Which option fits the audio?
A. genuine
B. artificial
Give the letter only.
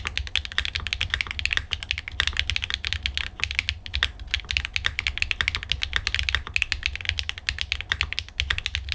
A